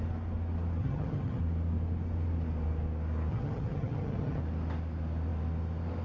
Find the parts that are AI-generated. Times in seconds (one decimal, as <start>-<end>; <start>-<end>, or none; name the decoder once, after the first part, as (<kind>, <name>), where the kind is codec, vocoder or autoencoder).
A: 0.8-1.4 (vocoder, HiFi-GAN); 3.3-4.4